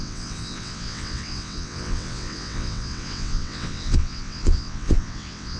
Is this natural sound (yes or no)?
no